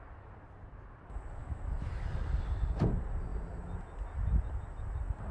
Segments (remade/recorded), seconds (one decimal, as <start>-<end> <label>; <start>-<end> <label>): 0.0-1.4 recorded; 1.4-2.0 remade; 2.0-5.3 recorded